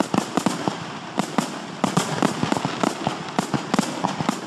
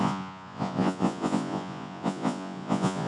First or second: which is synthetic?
second